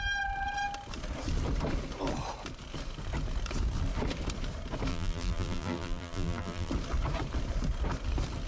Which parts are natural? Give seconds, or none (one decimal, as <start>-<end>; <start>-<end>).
0.0-4.9; 6.7-8.5